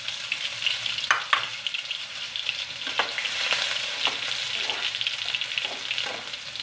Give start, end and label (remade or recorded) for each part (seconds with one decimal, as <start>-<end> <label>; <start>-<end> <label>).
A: 0.0-1.5 recorded; 1.5-3.9 remade; 3.9-6.6 recorded